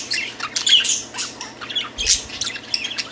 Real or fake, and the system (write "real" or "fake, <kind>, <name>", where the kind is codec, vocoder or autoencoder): real